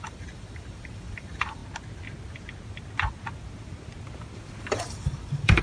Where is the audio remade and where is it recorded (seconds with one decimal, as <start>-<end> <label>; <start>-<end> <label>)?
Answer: 0.0-1.6 remade; 1.6-4.6 recorded; 4.6-5.6 remade